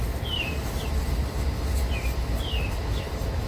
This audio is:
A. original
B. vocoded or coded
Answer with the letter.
A